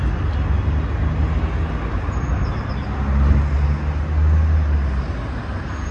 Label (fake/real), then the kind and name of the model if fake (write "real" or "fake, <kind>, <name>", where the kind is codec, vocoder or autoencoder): real